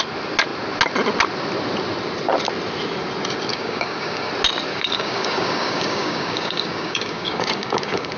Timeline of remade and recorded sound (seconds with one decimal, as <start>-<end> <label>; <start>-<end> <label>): 0.0-3.5 recorded; 3.5-4.3 remade; 4.3-4.7 recorded; 4.7-8.2 remade